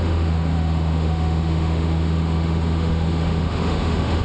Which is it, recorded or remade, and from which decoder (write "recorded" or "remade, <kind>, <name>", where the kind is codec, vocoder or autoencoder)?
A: remade, autoencoder, DAC-VAE